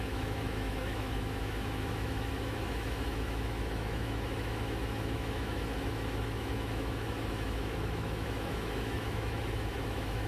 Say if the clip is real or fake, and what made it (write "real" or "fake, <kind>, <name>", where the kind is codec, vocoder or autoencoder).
fake, autoencoder, DAC-VAE